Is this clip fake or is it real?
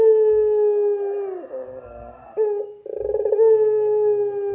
real